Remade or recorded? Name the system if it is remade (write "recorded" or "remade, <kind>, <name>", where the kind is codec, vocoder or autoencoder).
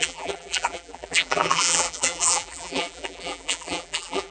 remade, vocoder, BigVGAN v2